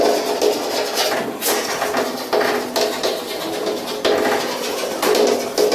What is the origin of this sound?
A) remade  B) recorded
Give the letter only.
B